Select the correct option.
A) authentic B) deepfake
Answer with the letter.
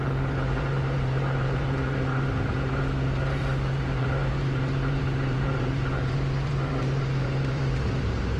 B